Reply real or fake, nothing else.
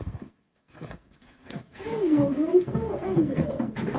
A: fake